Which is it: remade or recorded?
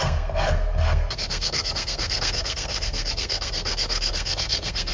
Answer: remade